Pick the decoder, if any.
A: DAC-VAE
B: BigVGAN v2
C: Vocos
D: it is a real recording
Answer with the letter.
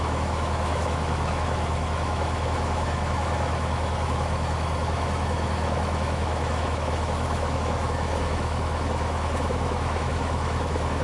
A